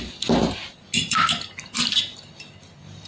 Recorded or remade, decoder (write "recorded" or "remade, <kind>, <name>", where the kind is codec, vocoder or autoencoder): recorded